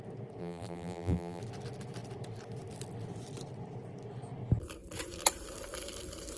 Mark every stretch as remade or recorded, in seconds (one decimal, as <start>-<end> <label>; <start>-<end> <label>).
0.0-0.4 recorded; 0.4-1.4 remade; 1.4-6.4 recorded